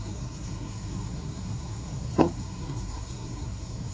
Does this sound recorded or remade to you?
remade